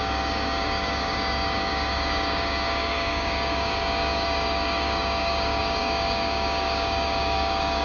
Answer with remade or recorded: remade